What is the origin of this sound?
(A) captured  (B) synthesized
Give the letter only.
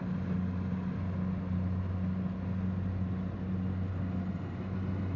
A